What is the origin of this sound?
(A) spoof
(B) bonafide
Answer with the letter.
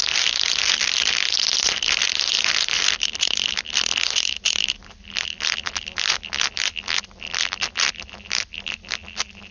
B